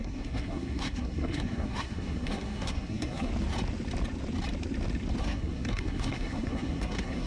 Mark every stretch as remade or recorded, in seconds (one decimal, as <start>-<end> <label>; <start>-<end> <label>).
0.0-3.3 remade; 3.3-5.2 recorded; 5.2-7.3 remade